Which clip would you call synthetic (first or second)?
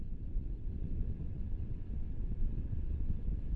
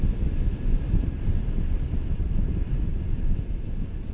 first